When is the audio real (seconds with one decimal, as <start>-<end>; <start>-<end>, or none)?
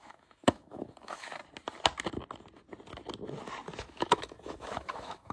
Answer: 1.4-3.8